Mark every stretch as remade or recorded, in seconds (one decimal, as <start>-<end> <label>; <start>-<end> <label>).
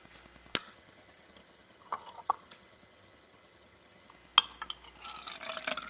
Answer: 0.0-0.6 recorded; 0.6-4.1 remade; 4.1-5.9 recorded